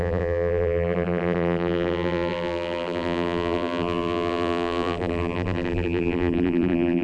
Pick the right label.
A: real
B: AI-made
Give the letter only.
B